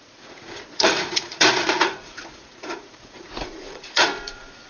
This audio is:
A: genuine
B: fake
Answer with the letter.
B